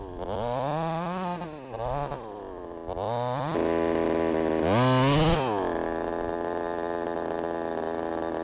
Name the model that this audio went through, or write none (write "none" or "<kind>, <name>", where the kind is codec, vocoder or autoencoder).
none